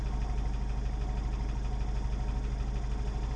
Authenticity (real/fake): real